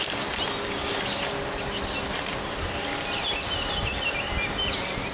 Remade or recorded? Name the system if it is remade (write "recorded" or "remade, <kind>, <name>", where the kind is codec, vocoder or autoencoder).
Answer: recorded